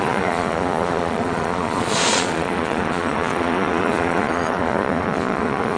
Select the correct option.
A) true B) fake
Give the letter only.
B